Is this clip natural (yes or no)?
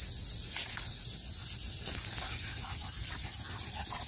yes